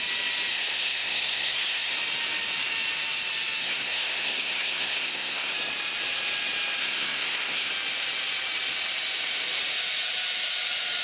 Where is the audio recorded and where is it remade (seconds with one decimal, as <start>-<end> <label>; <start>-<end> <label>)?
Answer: 0.0-0.5 recorded; 0.5-1.9 remade; 1.9-3.6 recorded; 3.6-5.5 remade; 5.5-6.8 recorded; 6.8-7.7 remade; 7.7-11.0 recorded